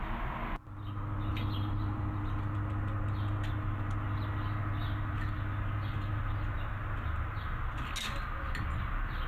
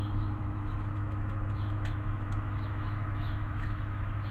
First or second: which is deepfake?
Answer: second